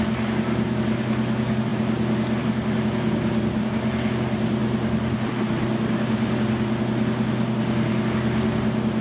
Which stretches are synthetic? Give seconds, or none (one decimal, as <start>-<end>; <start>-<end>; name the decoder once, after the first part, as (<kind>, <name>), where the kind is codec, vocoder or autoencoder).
none